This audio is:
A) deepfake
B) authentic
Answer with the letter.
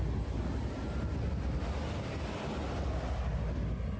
B